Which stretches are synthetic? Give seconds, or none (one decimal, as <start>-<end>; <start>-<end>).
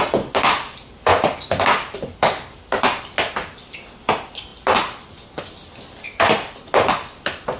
none